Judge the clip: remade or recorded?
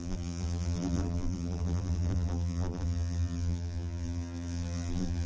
remade